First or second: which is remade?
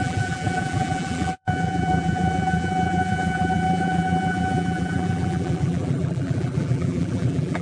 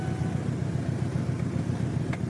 first